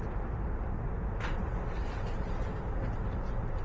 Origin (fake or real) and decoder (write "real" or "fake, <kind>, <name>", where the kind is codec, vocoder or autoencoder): real